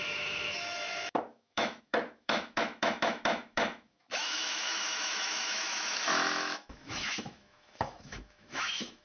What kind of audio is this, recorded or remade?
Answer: remade